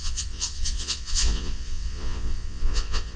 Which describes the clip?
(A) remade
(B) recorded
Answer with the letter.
A